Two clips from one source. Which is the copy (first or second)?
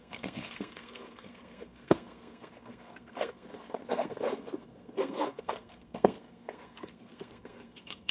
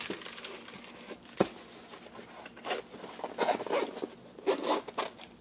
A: first